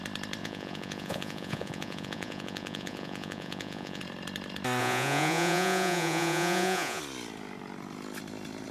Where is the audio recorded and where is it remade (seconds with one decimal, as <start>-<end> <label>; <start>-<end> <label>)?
0.0-0.4 recorded; 0.4-4.0 remade; 4.0-4.8 recorded; 4.8-7.0 remade; 7.0-8.7 recorded